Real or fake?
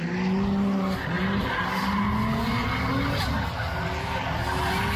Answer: real